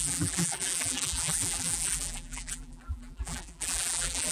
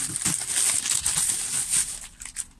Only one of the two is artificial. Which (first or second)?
first